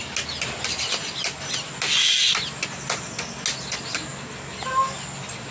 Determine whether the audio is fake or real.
real